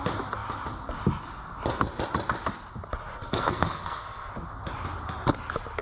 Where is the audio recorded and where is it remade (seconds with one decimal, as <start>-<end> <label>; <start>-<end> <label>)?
0.0-3.1 recorded; 3.1-4.3 remade; 4.3-5.8 recorded